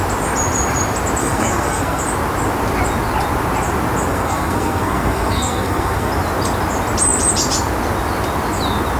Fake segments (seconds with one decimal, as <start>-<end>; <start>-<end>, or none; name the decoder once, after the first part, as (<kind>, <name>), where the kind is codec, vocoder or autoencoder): 1.2-2.0 (codec, SNAC); 4.1-6.1